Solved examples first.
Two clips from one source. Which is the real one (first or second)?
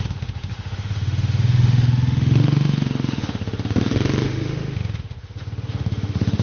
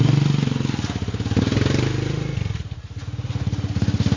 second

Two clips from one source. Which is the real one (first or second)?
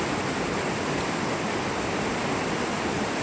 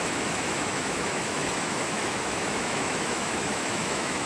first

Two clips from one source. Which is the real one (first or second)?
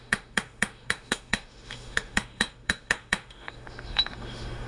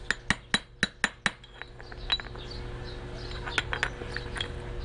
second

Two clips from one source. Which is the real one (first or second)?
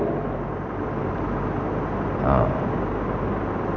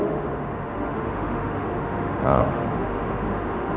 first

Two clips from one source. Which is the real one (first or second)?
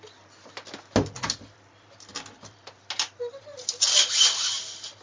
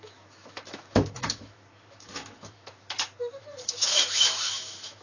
first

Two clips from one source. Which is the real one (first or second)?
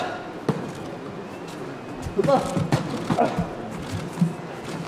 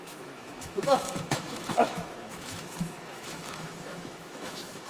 first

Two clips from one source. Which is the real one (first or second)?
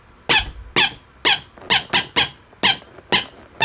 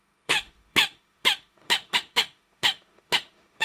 first